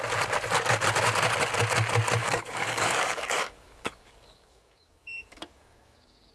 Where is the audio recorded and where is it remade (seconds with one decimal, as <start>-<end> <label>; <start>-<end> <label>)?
0.0-2.2 recorded; 2.2-6.3 remade